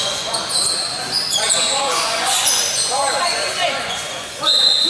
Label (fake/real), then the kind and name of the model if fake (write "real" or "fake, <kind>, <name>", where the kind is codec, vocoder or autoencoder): fake, vocoder, Vocos